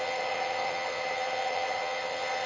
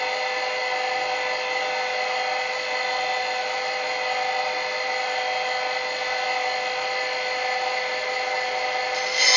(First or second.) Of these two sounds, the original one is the second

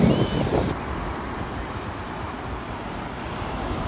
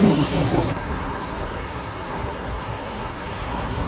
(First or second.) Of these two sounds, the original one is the first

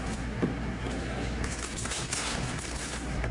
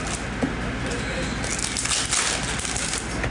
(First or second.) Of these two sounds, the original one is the second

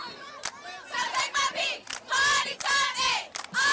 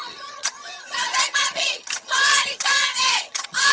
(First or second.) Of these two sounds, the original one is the first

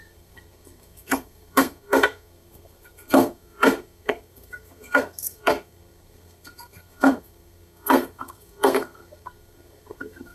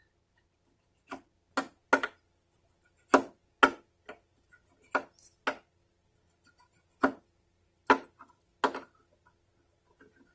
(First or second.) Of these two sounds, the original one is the second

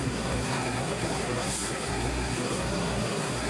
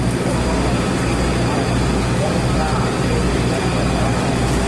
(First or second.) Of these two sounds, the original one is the second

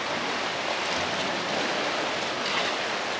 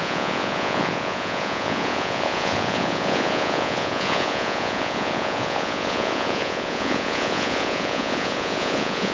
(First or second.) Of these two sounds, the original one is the first